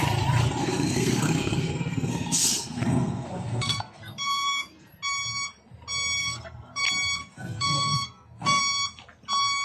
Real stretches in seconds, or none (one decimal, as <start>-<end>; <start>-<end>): 0.0-0.6; 4.9-6.2; 6.8-7.2; 8.6-9.6